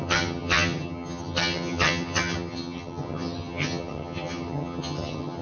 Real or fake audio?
fake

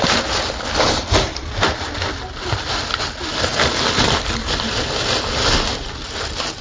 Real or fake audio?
real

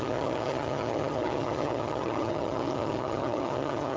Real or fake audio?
fake